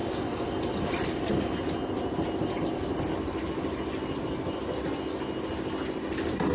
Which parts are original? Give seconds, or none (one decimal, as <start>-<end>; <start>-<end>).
0.0-6.5